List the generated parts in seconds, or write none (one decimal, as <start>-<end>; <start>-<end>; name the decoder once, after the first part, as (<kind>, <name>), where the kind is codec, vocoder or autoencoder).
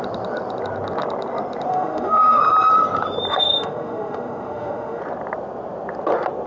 1.7-2.4 (autoencoder, DAC-VAE); 3.3-5.0